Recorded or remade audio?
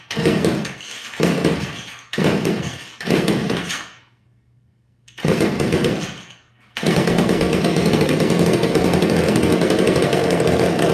remade